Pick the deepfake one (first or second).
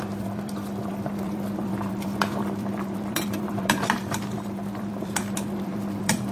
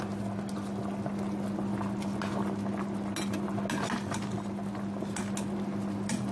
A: first